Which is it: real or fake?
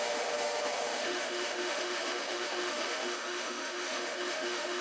fake